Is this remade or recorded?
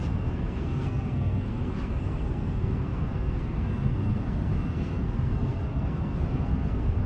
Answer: remade